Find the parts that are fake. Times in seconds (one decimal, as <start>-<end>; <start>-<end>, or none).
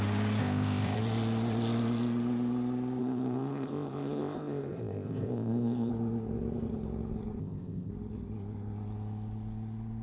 0.4-1.0; 3.0-5.9; 7.4-7.9